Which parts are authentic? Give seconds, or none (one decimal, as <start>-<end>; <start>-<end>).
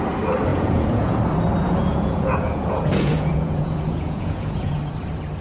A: 0.0-0.5; 1.2-1.6; 4.8-5.4